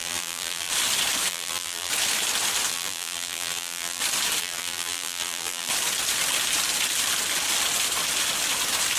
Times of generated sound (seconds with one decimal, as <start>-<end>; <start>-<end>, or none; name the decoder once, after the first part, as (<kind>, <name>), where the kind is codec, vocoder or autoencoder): 0.0-0.7 (vocoder, BigVGAN v2); 1.3-1.9; 2.7-4.0; 4.4-5.7